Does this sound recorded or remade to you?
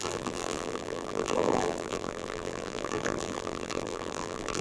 remade